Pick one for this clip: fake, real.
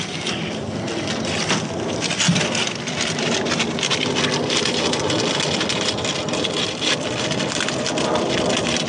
real